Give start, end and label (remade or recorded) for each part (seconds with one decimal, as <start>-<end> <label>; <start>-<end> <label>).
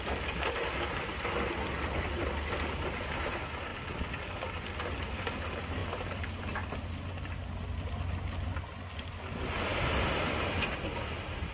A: 0.0-11.5 recorded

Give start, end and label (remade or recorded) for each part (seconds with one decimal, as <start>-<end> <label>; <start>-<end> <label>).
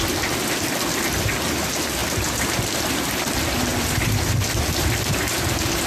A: 0.0-5.9 recorded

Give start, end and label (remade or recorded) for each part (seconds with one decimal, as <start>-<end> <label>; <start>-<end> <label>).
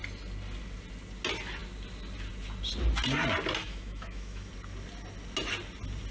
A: 0.0-3.6 recorded; 3.6-4.5 remade; 4.5-6.1 recorded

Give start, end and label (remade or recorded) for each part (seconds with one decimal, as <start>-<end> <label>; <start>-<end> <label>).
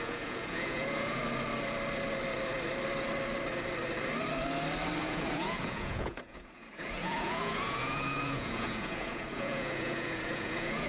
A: 0.0-1.2 remade; 1.2-5.0 recorded; 5.0-10.9 remade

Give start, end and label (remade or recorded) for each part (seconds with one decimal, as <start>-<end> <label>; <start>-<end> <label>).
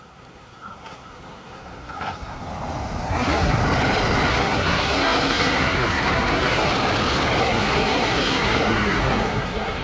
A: 0.0-2.5 remade; 2.5-3.0 recorded; 3.0-3.6 remade; 3.6-4.3 recorded; 4.3-6.7 remade; 6.7-7.4 recorded; 7.4-9.8 remade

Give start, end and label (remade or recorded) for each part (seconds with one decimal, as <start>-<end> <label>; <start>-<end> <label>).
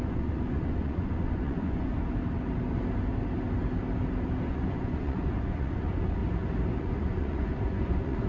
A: 0.0-1.9 remade; 1.9-4.5 recorded; 4.5-6.2 remade; 6.2-6.8 recorded; 6.8-8.3 remade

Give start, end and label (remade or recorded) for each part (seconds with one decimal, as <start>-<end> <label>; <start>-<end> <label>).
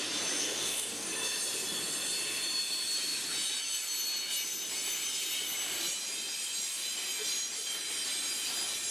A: 0.0-0.4 recorded; 0.4-1.1 remade; 1.1-8.9 recorded